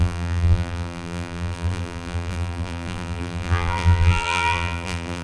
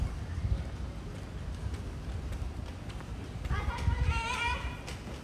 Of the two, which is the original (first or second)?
second